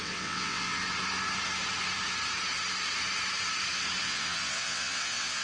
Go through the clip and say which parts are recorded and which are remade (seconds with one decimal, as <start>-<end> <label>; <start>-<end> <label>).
0.0-0.8 remade; 0.8-4.0 recorded; 4.0-5.4 remade